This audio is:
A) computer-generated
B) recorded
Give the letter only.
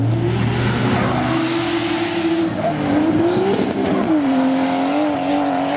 B